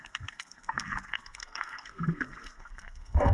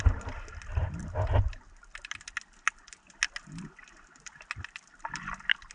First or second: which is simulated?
first